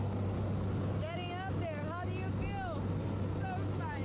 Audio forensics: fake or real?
real